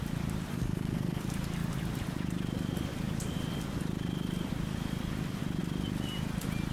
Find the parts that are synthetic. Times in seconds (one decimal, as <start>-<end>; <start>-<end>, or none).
0.5-1.2